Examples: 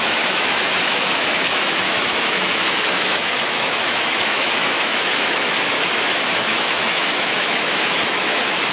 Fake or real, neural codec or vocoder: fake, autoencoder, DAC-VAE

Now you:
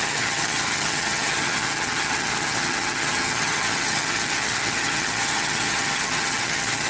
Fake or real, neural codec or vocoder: fake, vocoder, HiFi-GAN